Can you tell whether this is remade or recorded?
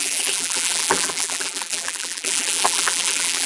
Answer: remade